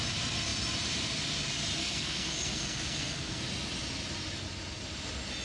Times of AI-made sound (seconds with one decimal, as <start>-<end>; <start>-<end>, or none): 1.8-3.4